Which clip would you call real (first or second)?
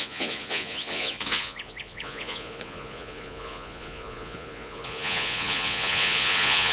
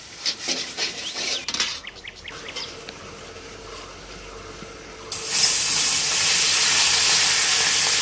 second